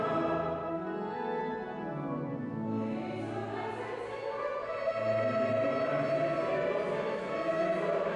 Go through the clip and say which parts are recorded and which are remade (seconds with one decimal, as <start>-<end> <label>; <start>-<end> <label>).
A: 0.0-0.7 recorded; 0.7-1.4 remade; 1.4-8.2 recorded